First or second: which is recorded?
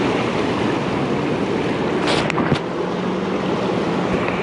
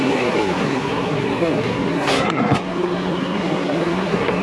first